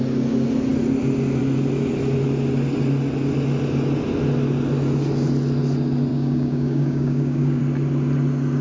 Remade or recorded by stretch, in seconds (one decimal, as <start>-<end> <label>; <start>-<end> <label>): 0.0-6.1 recorded; 6.1-7.6 remade; 7.6-8.6 recorded